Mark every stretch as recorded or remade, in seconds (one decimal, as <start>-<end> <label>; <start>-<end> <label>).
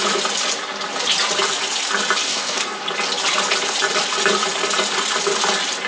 0.0-2.2 recorded; 2.2-2.8 remade; 2.8-5.9 recorded